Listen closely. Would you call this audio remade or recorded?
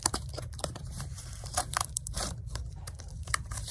remade